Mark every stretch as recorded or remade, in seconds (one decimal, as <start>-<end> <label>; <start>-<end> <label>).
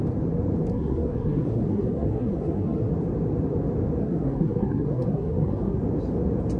0.0-0.7 recorded; 0.7-2.9 remade; 2.9-4.0 recorded; 4.0-5.8 remade; 5.8-6.6 recorded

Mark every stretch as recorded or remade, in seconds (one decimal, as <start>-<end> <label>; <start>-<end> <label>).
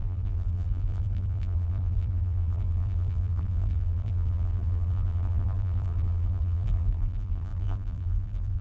0.0-8.6 remade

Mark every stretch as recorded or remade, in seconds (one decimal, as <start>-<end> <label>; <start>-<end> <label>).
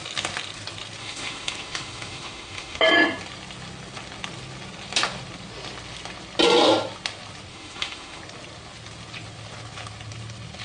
0.0-1.0 recorded; 1.0-2.8 remade; 2.8-7.5 recorded; 7.5-8.2 remade; 8.2-10.6 recorded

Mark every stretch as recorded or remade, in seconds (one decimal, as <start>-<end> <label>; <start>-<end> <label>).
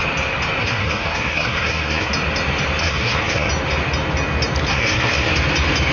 0.0-0.6 recorded; 0.6-2.1 remade; 2.1-2.8 recorded; 2.8-3.5 remade; 3.5-4.7 recorded; 4.7-5.3 remade; 5.3-5.9 recorded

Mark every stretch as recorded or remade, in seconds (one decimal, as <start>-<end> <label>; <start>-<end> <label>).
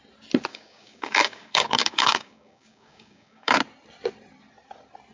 0.0-0.5 recorded; 0.5-3.6 remade; 3.6-5.1 recorded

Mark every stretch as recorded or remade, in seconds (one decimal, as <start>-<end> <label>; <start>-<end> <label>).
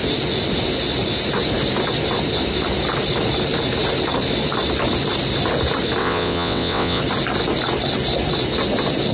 0.0-6.0 recorded; 6.0-7.0 remade; 7.0-9.1 recorded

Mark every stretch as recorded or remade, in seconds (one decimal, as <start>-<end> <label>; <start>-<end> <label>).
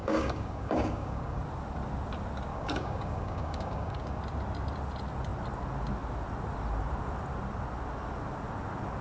0.0-1.4 remade; 1.4-2.5 recorded; 2.5-4.2 remade; 4.2-9.0 recorded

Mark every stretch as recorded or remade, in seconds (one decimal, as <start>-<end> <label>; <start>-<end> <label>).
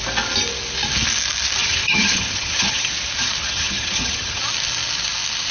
0.0-1.6 recorded; 1.6-2.9 remade; 2.9-3.4 recorded; 3.4-4.4 remade; 4.4-5.5 recorded